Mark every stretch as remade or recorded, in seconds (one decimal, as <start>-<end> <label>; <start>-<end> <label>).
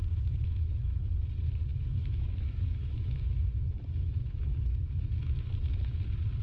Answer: 0.0-0.4 recorded; 0.4-1.1 remade; 1.1-1.7 recorded; 1.7-5.5 remade; 5.5-6.4 recorded